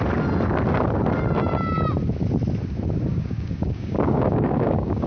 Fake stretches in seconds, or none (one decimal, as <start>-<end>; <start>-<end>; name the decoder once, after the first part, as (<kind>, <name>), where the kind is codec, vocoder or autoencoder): 3.1-5.1 (codec, DAC)